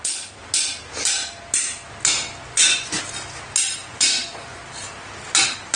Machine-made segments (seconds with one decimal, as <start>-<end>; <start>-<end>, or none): 2.4-3.0; 3.8-4.6